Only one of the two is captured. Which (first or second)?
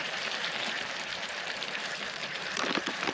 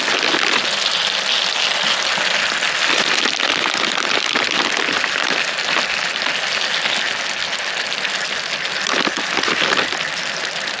second